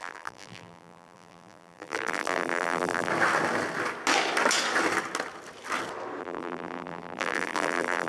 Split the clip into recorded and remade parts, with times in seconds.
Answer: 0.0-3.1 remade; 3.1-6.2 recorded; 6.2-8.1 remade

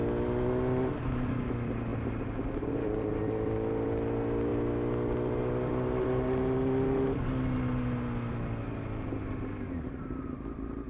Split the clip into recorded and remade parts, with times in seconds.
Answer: 0.0-10.9 recorded